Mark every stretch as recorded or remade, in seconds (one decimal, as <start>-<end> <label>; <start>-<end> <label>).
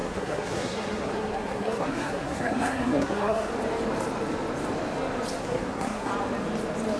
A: 0.0-3.5 remade; 3.5-5.4 recorded; 5.4-6.1 remade; 6.1-7.0 recorded